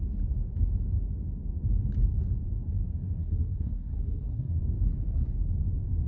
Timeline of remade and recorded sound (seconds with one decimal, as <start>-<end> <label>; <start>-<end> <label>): 0.0-3.2 recorded; 3.2-4.6 remade; 4.6-6.1 recorded